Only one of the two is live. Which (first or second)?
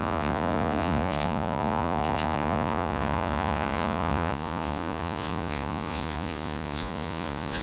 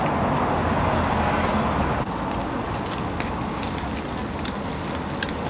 second